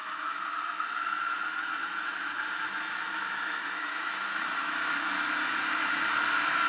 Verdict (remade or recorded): remade